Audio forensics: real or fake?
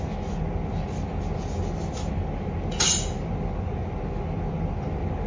real